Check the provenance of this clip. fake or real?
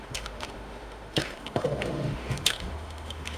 fake